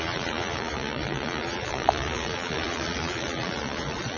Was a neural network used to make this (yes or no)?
yes